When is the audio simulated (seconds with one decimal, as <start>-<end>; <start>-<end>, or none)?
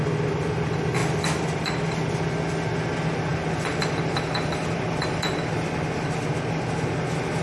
1.0-1.8; 3.3-5.3